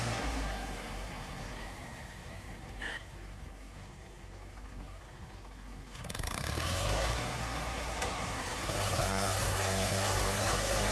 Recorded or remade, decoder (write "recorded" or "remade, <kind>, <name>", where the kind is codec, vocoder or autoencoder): remade, codec, SNAC